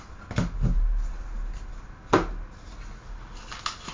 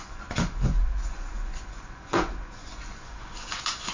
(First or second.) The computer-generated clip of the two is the second